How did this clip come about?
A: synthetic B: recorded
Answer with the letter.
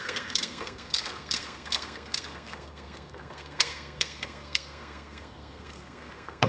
A